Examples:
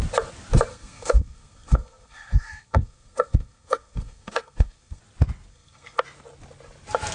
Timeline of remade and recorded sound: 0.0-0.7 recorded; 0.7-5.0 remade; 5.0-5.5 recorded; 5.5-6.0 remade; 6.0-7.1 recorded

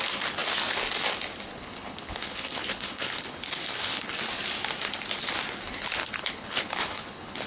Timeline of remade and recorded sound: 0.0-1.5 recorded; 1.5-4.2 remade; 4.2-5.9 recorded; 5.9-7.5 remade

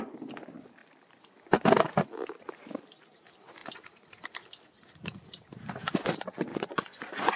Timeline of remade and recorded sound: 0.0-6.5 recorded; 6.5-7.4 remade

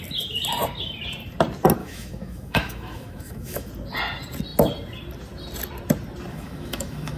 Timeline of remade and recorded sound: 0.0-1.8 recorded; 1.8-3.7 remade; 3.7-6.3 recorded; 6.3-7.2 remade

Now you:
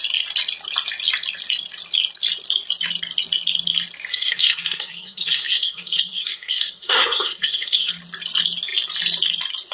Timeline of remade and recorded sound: 0.0-4.1 recorded; 4.1-7.9 remade; 7.9-9.7 recorded